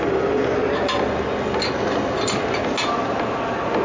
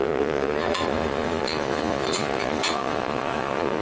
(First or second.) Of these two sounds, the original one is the first